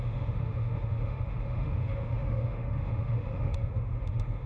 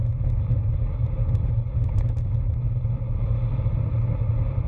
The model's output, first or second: first